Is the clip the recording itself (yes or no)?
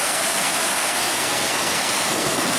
no